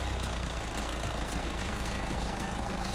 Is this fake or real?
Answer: fake